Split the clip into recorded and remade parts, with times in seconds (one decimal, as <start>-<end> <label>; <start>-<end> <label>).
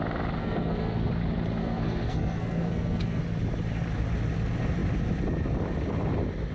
0.0-0.4 recorded; 0.4-1.1 remade; 1.1-1.6 recorded; 1.6-3.2 remade; 3.2-6.5 recorded